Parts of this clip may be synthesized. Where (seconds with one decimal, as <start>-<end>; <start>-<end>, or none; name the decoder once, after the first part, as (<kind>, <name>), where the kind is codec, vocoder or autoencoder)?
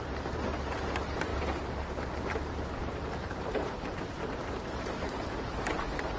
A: 0.0-6.2 (vocoder, BigVGAN v2)